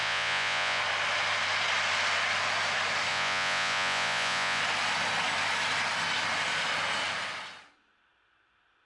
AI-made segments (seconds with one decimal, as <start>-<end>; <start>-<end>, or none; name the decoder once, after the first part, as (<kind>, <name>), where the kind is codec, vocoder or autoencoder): 0.0-0.8 (vocoder, Vocos); 3.1-4.6